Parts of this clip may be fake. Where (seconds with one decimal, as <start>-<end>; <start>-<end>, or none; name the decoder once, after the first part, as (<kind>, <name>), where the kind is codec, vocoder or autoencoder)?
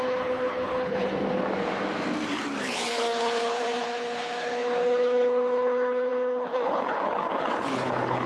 0.0-1.1 (codec, HILCodec); 2.6-8.3